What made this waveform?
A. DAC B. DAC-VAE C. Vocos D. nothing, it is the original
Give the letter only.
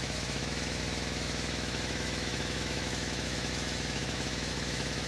B